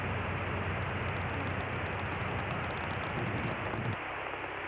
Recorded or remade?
recorded